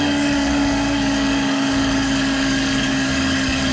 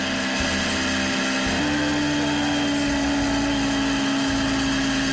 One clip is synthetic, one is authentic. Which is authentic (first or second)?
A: second